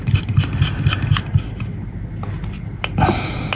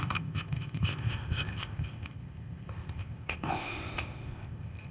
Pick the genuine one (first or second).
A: first